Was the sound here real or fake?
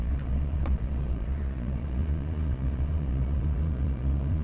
fake